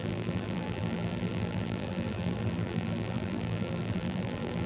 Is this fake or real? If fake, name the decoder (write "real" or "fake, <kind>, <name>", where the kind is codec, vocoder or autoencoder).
fake, vocoder, BigVGAN v2